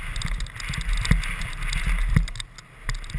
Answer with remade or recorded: recorded